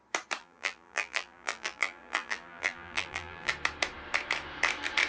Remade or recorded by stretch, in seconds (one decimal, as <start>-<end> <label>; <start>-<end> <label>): 0.0-0.4 recorded; 0.4-3.5 remade; 3.5-5.1 recorded